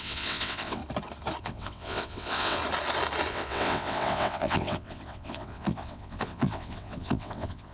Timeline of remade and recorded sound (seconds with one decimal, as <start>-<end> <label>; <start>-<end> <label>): 0.0-0.8 remade; 0.8-1.4 recorded; 1.4-2.6 remade; 2.6-3.3 recorded; 3.3-7.7 remade